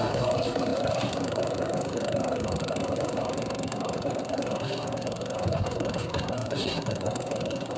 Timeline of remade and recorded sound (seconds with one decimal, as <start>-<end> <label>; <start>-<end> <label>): 0.0-7.8 remade